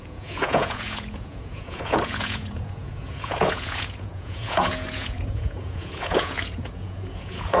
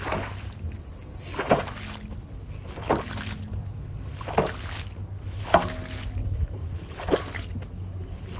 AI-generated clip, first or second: first